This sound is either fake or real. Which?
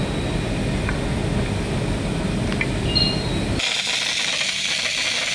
real